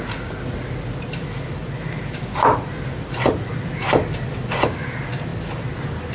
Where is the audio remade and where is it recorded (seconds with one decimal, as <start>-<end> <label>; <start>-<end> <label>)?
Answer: 0.0-1.6 recorded; 1.6-4.4 remade; 4.4-6.1 recorded